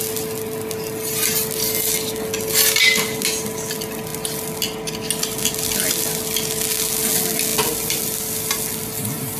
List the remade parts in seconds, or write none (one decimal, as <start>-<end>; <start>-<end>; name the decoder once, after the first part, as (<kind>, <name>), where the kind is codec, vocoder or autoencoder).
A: none